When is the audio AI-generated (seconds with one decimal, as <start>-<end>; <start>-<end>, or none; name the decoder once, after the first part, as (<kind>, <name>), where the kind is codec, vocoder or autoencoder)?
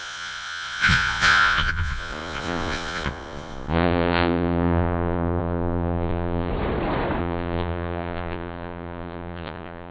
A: 0.0-6.5 (vocoder, Vocos); 7.2-9.9